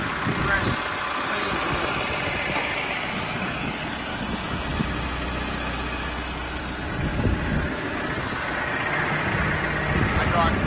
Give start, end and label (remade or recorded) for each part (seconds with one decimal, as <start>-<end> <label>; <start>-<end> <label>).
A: 0.0-10.7 recorded